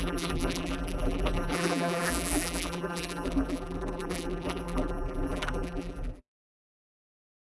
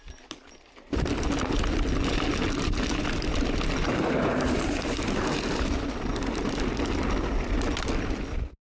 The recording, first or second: second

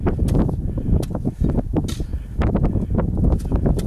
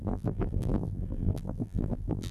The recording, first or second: first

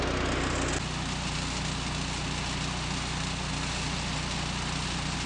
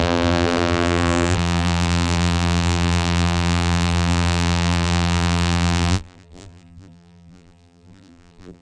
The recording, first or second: first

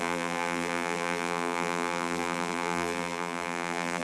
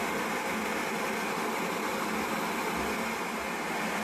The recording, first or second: second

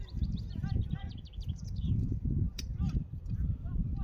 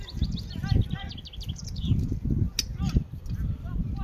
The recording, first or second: second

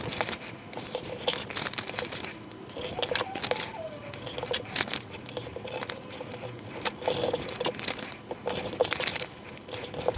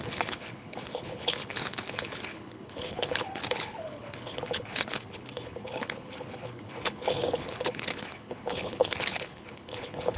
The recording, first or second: first